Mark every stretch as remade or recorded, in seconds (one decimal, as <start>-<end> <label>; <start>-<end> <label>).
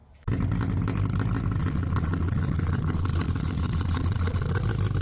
0.0-1.6 recorded; 1.6-4.6 remade; 4.6-5.0 recorded